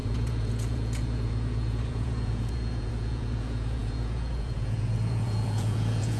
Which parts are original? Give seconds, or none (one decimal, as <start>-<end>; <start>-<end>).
none